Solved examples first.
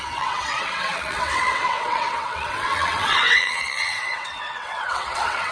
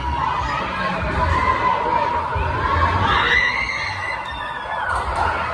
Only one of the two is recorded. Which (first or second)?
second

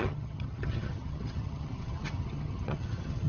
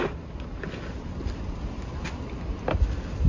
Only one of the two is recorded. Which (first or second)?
second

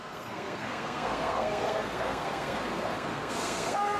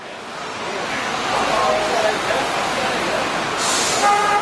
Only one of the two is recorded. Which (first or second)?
second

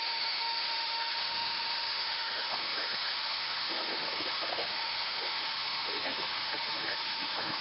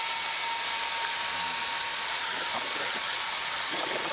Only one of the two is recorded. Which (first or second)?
second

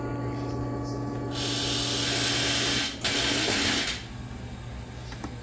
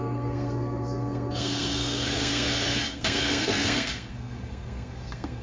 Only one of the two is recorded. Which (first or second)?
first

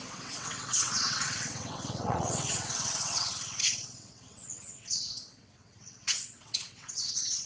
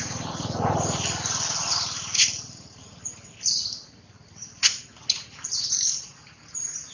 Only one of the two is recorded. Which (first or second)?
second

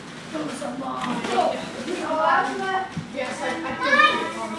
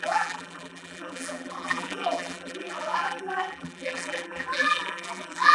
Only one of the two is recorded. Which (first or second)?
first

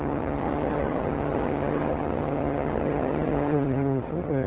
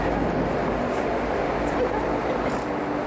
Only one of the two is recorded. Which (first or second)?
second